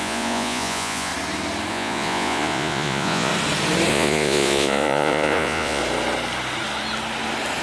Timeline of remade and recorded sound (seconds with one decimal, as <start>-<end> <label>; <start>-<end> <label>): 0.0-1.1 remade; 1.1-1.7 recorded; 1.7-3.3 remade; 3.3-3.9 recorded; 3.9-5.8 remade; 5.8-7.6 recorded